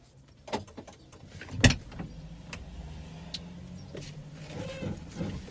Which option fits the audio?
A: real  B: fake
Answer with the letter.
A